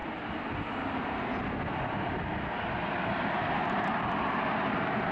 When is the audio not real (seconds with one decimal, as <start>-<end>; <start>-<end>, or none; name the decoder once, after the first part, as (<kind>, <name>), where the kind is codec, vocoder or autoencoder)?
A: none